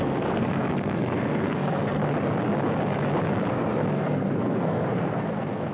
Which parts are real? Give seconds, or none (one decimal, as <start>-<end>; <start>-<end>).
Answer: 2.0-3.5